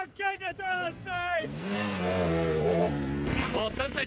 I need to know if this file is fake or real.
fake